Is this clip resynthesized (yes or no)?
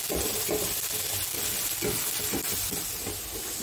no